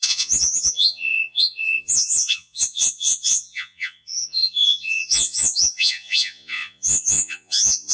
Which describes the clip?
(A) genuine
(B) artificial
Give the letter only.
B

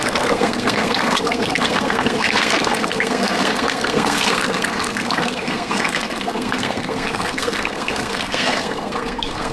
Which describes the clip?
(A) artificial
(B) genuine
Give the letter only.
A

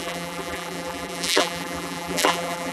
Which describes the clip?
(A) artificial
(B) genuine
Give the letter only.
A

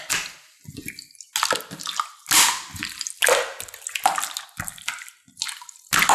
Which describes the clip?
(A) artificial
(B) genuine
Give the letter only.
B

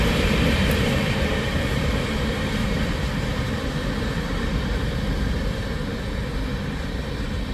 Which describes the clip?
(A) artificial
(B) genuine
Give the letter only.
A